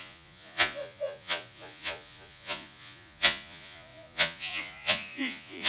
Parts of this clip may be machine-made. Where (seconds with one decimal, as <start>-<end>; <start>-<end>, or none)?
0.0-5.7